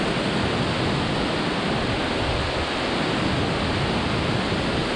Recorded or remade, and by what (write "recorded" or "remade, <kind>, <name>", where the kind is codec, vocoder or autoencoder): recorded